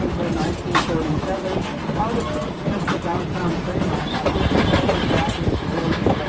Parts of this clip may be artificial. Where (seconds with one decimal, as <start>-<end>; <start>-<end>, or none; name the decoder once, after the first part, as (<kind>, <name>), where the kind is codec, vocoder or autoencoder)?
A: 2.4-4.3 (vocoder, BigVGAN v2)